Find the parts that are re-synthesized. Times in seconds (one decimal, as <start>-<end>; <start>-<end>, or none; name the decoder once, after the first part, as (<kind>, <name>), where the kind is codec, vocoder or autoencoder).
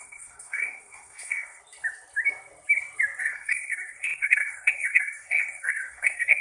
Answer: 0.0-1.6 (codec, SNAC); 3.2-6.4